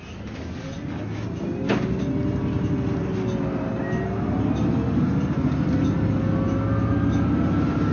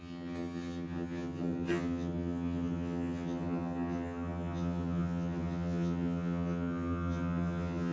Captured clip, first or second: first